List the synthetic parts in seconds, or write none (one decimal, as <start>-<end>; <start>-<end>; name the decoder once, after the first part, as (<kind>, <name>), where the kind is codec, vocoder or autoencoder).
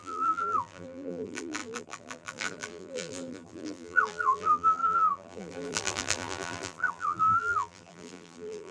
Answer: 0.0-8.7 (vocoder, BigVGAN v2)